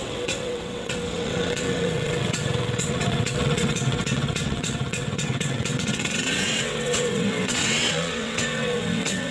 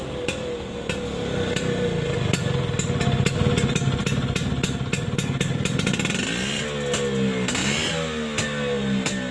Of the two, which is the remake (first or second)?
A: first